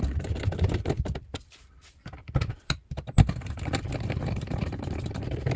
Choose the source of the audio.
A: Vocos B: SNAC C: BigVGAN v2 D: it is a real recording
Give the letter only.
D